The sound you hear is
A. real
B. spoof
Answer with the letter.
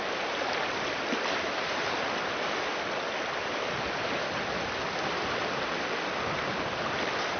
A